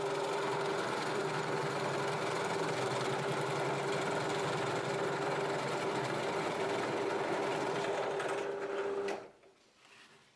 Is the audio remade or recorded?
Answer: recorded